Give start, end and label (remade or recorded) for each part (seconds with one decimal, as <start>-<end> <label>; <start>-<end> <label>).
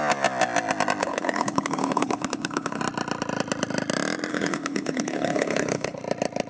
0.0-1.0 recorded; 1.0-2.8 remade; 2.8-4.3 recorded; 4.3-6.0 remade; 6.0-6.5 recorded